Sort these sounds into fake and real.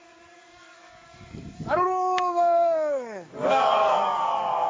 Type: fake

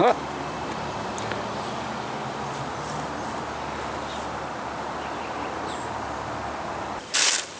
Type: real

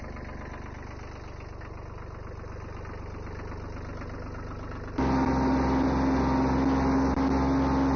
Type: real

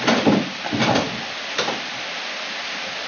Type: real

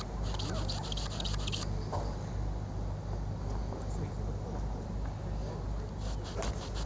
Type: real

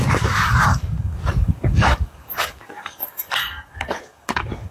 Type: fake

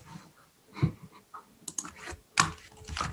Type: real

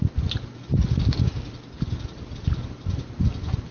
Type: real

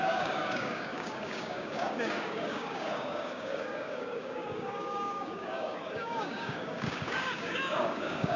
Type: fake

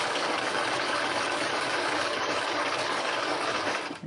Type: fake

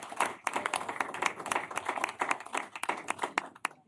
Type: real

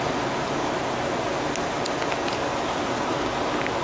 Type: real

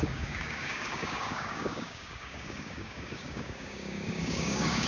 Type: fake